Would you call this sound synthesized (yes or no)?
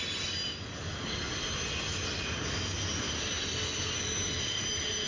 no